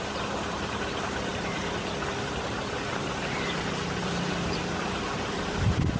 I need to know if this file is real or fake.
fake